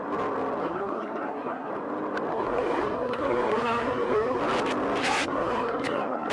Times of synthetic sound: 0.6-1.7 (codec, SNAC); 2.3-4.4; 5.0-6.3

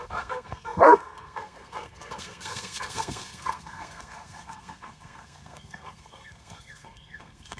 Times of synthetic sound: 0.0-7.6 (codec, SNAC)

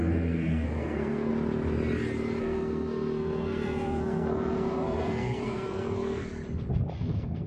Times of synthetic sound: 0.0-1.3 (codec, SNAC); 2.4-6.3; 7.0-7.5

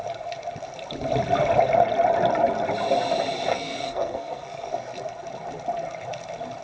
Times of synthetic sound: 3.5-4.7 (codec, SNAC)

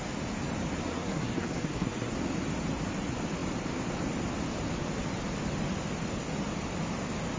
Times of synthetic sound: 0.9-2.1 (codec, SNAC)

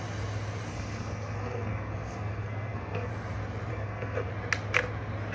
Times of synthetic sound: 0.7-3.1 (codec, SNAC); 3.7-4.3

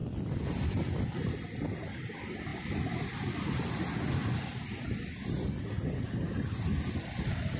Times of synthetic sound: none